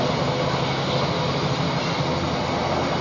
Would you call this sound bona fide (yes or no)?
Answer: yes